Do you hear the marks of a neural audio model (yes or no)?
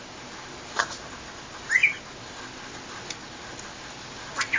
no